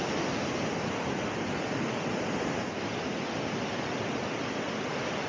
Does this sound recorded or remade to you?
recorded